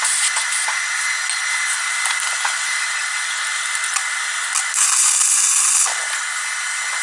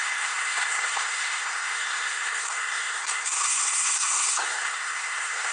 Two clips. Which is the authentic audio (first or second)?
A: first